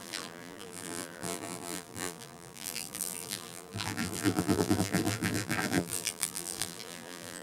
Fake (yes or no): yes